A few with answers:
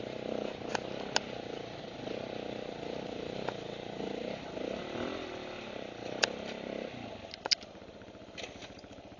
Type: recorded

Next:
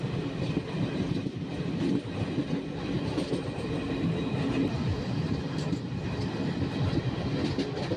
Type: recorded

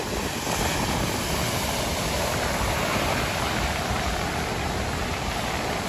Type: recorded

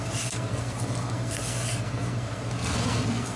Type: remade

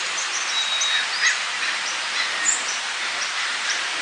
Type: recorded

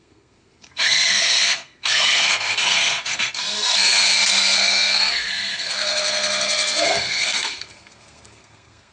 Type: remade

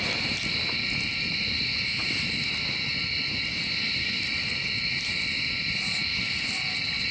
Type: recorded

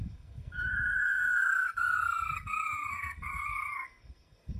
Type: remade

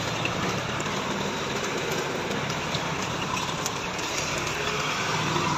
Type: recorded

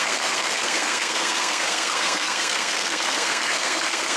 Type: remade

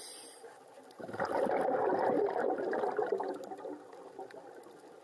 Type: recorded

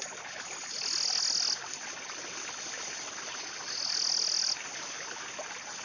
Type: recorded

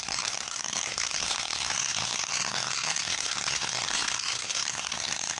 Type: remade